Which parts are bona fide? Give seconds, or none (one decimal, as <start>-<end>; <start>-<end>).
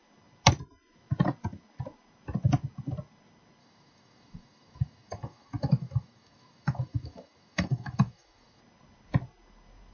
0.0-3.6; 8.6-9.9